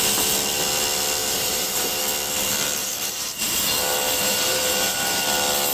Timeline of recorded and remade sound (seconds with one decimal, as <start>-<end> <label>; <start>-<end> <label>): 0.0-1.2 recorded; 1.2-2.0 remade; 2.0-2.8 recorded; 2.8-5.2 remade; 5.2-5.7 recorded

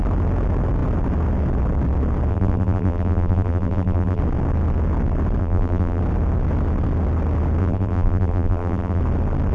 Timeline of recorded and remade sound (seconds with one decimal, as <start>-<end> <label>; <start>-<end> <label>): 0.0-2.3 recorded; 2.3-4.2 remade; 4.2-5.4 recorded; 5.4-6.0 remade; 6.0-7.6 recorded; 7.6-9.0 remade; 9.0-9.5 recorded